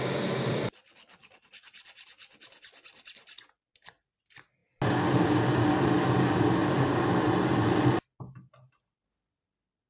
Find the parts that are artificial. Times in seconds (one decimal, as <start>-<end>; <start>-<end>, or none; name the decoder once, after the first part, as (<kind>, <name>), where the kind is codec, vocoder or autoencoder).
none